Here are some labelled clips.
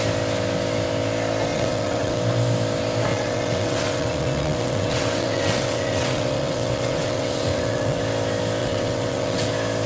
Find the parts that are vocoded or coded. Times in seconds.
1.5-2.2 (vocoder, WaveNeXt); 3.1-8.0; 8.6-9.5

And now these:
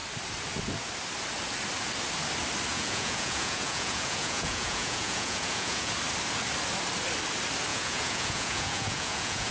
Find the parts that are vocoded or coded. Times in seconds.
2.7-5.9 (vocoder, Vocos); 7.7-9.5

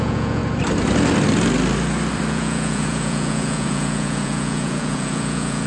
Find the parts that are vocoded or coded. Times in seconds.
0.0-0.4 (vocoder, Vocos); 2.3-5.7

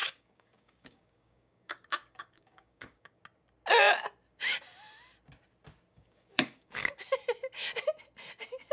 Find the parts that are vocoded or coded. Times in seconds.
0.0-3.2 (codec, DAC); 5.9-6.9

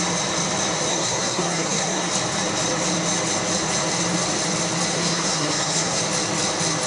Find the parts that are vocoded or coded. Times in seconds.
0.9-2.1 (codec, SNAC); 4.9-6.0

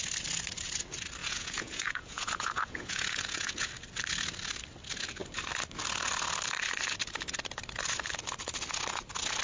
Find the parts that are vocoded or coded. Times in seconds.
1.2-3.7 (vocoder, Vocos)

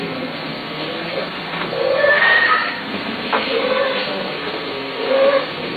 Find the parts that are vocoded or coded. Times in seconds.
0.0-5.8 (codec, SNAC)

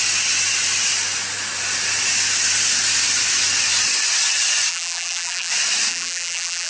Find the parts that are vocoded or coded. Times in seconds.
4.7-5.5 (vocoder, BigVGAN v2); 5.9-6.7